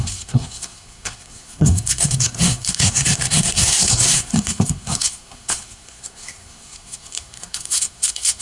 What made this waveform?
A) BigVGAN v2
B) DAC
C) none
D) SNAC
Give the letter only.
D